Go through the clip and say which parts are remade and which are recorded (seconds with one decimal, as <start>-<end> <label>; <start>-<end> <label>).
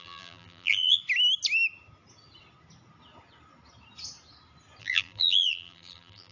0.0-1.0 remade; 1.0-4.8 recorded; 4.8-6.3 remade